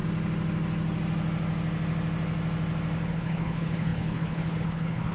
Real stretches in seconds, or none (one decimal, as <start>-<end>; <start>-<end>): 0.0-3.1